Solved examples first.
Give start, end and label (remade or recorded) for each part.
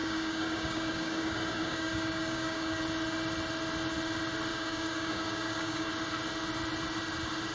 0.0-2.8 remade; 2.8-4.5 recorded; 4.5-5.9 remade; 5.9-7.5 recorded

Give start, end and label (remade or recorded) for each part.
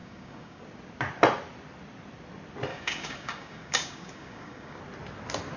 0.0-0.6 remade; 0.6-2.7 recorded; 2.7-4.8 remade; 4.8-5.6 recorded